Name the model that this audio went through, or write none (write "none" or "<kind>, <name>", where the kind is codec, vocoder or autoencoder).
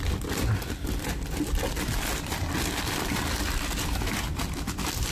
none